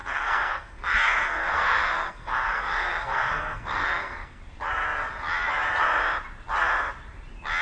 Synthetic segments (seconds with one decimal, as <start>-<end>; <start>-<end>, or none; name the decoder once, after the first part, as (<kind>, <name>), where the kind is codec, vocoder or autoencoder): 0.0-4.4 (codec, SNAC)